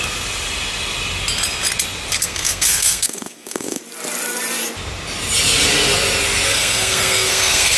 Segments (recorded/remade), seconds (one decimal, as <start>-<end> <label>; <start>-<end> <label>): 0.0-2.1 recorded; 2.1-3.8 remade; 3.8-6.5 recorded; 6.5-7.8 remade